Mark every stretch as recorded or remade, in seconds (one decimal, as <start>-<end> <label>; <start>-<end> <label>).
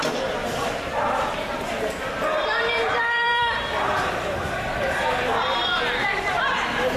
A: 0.0-0.4 recorded; 0.4-4.6 remade; 4.6-7.0 recorded